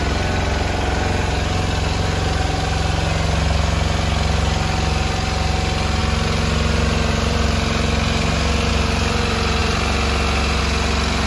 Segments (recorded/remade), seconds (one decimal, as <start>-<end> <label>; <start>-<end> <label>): 0.0-11.3 recorded